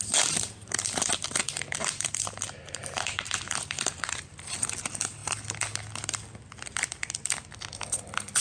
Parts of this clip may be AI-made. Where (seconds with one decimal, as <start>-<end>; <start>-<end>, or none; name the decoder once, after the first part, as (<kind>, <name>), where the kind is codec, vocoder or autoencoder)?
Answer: 0.0-5.2 (vocoder, BigVGAN v2)